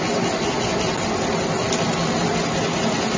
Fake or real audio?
real